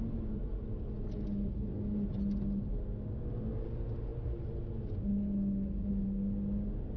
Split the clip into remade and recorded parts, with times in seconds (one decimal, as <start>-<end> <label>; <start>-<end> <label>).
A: 0.0-7.0 recorded